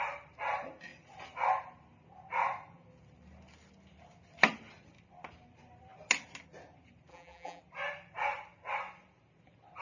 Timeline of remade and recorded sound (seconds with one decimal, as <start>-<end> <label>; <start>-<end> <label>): 0.0-7.1 recorded; 7.1-7.6 remade; 7.6-9.8 recorded